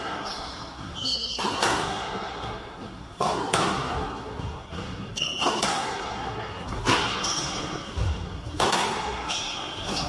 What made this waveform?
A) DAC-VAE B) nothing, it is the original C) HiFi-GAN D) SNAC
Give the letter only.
D